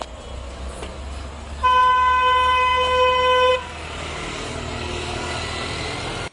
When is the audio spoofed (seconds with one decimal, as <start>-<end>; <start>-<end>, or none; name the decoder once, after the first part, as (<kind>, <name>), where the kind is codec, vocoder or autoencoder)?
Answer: none